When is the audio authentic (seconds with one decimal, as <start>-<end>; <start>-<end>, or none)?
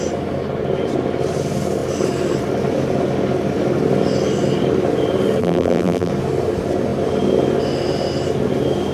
0.0-5.4; 6.1-8.9